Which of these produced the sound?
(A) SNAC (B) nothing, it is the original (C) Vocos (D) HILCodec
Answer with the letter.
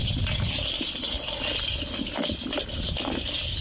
B